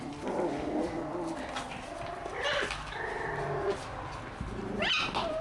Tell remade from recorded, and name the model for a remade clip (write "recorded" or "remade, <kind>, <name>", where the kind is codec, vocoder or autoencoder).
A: recorded